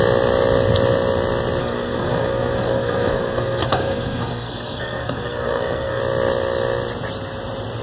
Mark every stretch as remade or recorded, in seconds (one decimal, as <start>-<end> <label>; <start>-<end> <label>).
0.0-1.6 recorded; 1.6-6.0 remade; 6.0-7.8 recorded